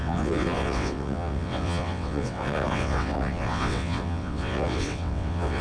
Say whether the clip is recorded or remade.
remade